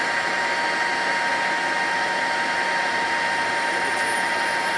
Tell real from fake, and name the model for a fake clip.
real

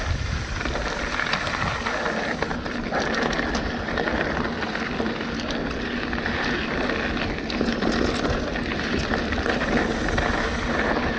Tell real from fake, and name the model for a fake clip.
real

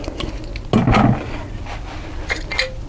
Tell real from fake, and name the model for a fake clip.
real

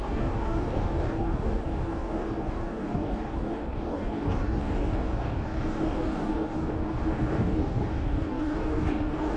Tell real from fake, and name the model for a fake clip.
fake, codec, DAC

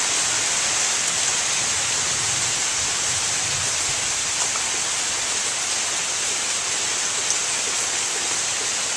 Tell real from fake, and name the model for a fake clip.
real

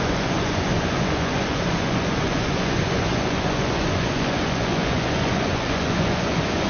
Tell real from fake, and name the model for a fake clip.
fake, vocoder, Vocos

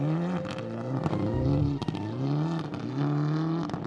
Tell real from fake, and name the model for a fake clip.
real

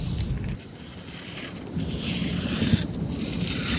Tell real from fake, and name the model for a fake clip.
fake, vocoder, BigVGAN v2